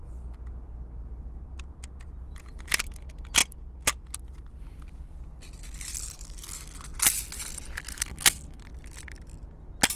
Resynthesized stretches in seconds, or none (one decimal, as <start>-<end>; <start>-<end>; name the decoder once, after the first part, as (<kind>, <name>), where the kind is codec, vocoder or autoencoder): 7.9-8.6 (codec, SNAC)